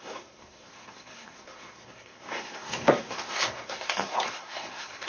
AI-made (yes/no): yes